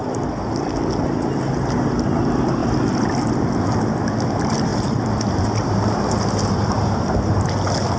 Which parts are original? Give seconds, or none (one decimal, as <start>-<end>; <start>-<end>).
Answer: 0.0-2.6; 3.3-4.7; 6.1-8.0